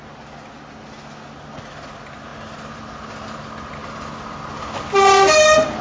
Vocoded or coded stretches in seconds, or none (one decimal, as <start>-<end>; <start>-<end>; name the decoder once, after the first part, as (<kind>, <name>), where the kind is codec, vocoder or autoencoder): none